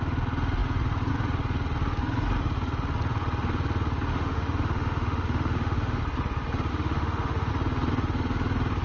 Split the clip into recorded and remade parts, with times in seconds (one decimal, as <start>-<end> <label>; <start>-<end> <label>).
0.0-4.1 recorded; 4.1-6.0 remade; 6.0-6.7 recorded; 6.7-7.5 remade; 7.5-8.8 recorded